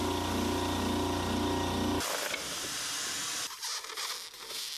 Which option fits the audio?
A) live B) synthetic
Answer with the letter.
A